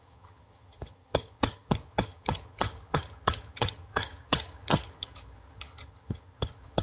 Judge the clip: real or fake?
fake